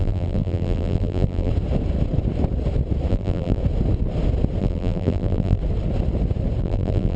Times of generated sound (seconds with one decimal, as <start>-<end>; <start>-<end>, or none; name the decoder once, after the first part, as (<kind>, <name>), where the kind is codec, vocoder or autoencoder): 0.0-1.5 (vocoder, BigVGAN v2); 3.1-3.6; 4.6-5.6; 6.6-7.2